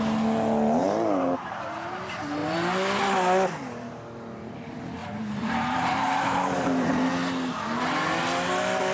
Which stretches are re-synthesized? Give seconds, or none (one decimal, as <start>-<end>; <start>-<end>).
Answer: 0.8-1.6; 5.0-7.1